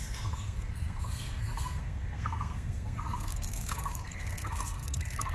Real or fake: fake